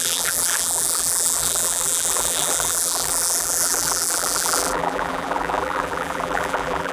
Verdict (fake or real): fake